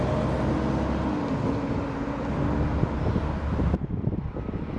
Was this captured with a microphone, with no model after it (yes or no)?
yes